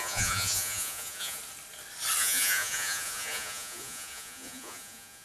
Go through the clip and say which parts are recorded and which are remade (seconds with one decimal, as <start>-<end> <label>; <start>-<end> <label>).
0.0-1.4 remade; 1.4-2.2 recorded; 2.2-5.2 remade